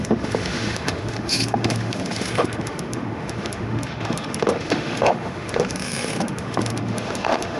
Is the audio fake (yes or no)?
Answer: yes